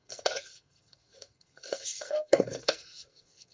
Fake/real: fake